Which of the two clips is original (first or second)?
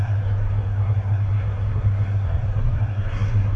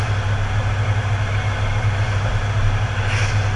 second